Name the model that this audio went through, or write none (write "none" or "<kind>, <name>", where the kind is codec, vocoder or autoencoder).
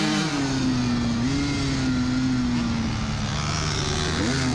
none